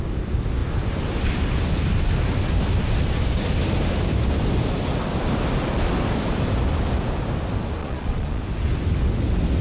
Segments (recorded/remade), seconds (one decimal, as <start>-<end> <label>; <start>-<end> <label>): 0.0-7.8 recorded; 7.8-8.4 remade; 8.4-9.6 recorded